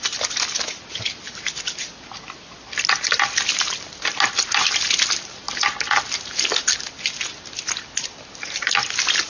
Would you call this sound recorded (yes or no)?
yes